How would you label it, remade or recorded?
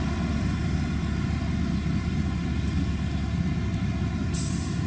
recorded